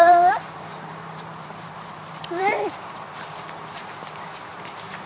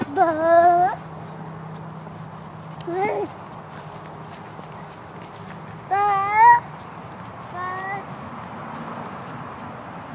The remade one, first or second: first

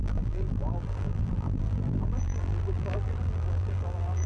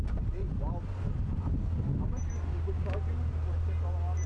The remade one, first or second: first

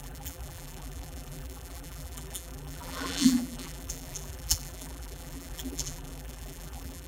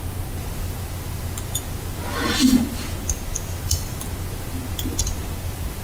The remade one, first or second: first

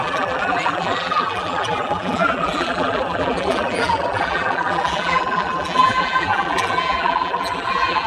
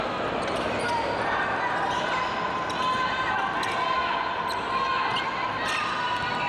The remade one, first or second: first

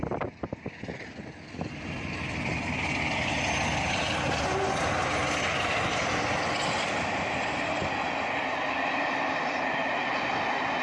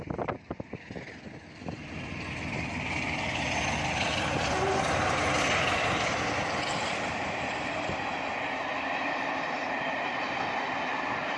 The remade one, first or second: second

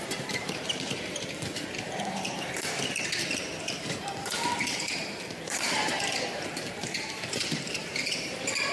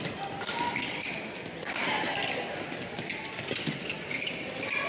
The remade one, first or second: first